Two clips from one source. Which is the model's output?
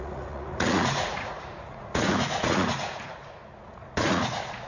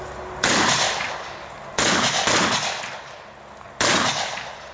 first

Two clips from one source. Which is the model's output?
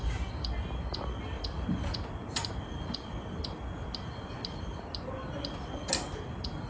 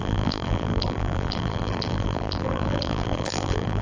second